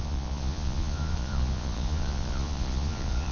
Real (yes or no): no